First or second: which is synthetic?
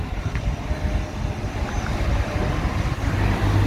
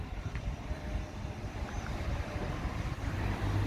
second